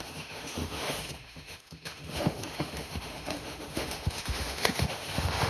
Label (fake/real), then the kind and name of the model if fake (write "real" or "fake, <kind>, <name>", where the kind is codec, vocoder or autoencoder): fake, autoencoder, DAC-VAE